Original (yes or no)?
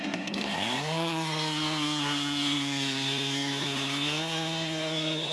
no